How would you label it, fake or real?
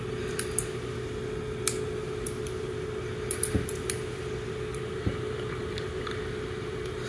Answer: real